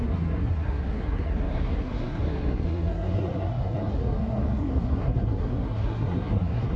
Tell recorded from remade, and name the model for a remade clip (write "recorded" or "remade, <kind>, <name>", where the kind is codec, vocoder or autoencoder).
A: remade, codec, SNAC